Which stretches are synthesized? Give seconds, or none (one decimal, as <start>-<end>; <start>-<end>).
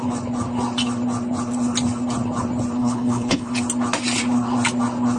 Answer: 2.8-3.5